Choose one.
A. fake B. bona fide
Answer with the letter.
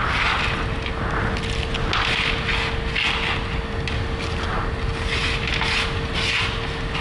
B